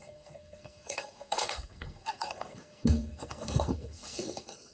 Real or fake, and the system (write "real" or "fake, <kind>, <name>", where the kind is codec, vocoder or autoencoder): fake, codec, SNAC